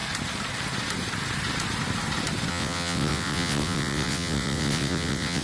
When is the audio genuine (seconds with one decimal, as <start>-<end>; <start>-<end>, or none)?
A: 0.0-2.5